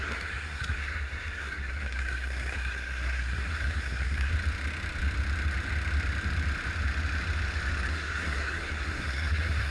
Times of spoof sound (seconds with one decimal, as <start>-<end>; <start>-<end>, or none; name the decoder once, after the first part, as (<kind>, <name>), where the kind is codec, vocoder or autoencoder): 0.0-4.3 (codec, SNAC); 7.9-9.7